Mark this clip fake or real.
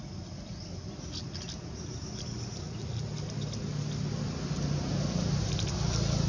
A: real